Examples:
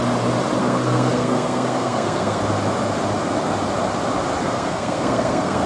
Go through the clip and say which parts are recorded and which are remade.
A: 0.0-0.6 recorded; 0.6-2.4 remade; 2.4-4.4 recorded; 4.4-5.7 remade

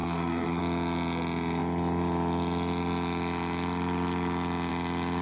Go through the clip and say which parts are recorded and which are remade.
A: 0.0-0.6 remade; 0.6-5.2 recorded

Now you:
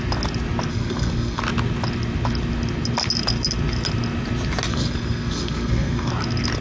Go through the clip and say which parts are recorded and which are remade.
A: 0.0-0.7 recorded; 0.7-1.4 remade; 1.4-4.7 recorded; 4.7-6.1 remade; 6.1-6.6 recorded

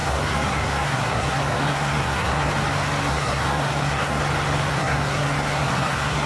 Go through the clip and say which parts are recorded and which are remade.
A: 0.0-2.5 remade; 2.5-3.1 recorded; 3.1-4.2 remade; 4.2-4.7 recorded; 4.7-6.3 remade